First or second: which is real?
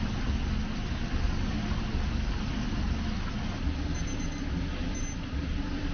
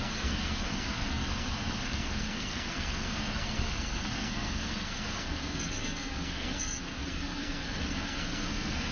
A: first